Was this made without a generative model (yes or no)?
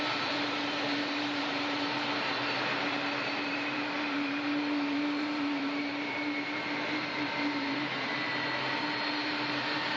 no